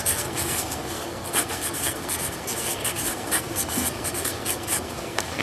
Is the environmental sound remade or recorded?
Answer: remade